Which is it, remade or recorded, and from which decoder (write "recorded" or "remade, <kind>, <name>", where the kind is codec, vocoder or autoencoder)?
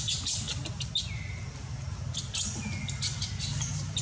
recorded